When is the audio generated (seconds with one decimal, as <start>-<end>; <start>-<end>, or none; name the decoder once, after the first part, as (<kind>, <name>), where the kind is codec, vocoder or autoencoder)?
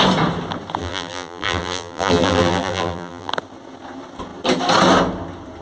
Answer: 0.8-3.3 (vocoder, BigVGAN v2)